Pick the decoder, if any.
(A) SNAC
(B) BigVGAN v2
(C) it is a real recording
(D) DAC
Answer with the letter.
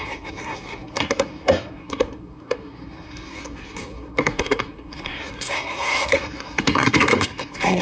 A